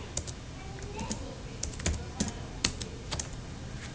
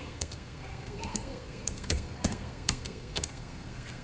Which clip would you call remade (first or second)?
second